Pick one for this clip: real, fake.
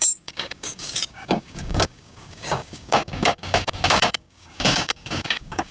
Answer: fake